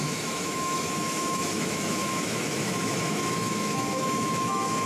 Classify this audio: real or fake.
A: fake